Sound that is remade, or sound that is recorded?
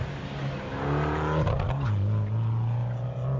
recorded